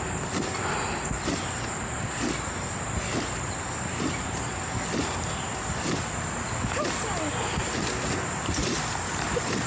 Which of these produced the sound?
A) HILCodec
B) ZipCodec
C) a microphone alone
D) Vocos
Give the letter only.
C